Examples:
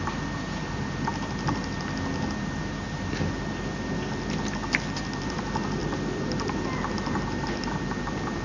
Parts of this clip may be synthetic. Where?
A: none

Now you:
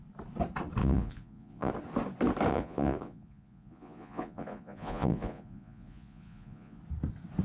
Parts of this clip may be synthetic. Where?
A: 0.8-1.7 (vocoder, Vocos); 2.5-6.8

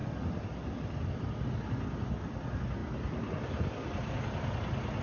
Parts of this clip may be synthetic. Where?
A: none

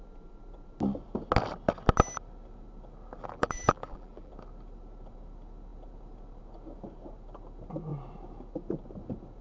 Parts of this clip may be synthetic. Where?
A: 3.2-4.3 (vocoder, BigVGAN v2)

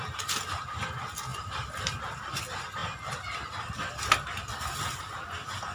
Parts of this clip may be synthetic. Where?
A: 1.3-2.4 (vocoder, BigVGAN v2)